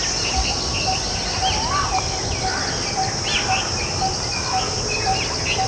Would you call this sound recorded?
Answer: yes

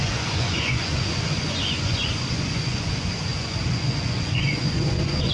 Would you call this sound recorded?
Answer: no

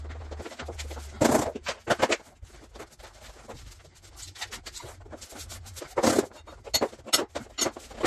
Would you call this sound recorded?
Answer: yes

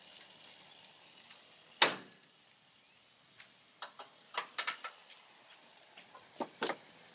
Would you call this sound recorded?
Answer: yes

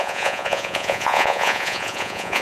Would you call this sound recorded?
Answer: no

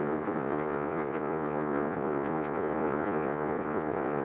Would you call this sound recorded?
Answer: no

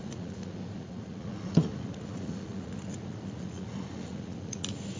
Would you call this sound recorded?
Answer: no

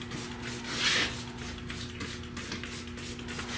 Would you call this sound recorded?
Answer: yes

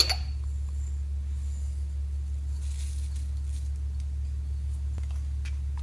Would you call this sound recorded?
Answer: yes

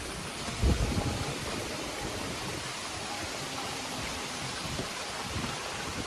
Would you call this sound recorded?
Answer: yes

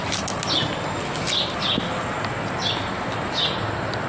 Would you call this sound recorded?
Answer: yes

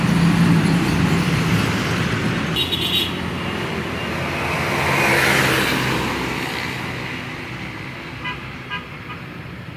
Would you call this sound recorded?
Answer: yes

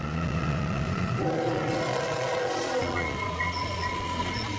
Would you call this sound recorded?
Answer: no